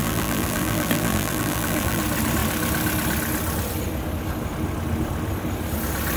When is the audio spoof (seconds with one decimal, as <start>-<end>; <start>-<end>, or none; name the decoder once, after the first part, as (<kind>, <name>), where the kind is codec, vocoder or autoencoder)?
0.0-2.0 (vocoder, BigVGAN v2)